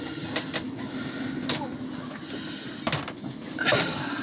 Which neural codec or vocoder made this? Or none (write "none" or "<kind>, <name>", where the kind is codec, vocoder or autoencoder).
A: none